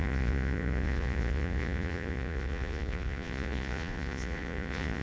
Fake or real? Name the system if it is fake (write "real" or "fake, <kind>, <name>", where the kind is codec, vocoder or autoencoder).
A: fake, vocoder, Vocos